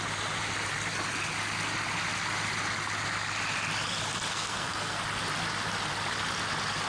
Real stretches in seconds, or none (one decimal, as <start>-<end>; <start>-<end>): 0.0-4.3; 5.0-6.9